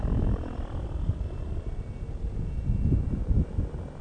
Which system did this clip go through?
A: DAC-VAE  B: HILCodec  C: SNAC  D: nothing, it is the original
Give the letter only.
D